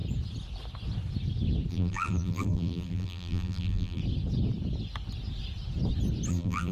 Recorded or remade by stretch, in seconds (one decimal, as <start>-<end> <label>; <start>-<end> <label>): 0.0-1.7 recorded; 1.7-4.0 remade; 4.0-6.3 recorded; 6.3-6.7 remade